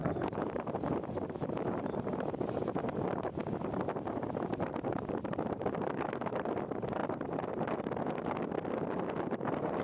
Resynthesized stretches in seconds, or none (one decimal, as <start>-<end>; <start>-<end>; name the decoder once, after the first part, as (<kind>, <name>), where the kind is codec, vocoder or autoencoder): 0.0-3.4 (vocoder, BigVGAN v2); 4.2-7.0; 9.2-9.8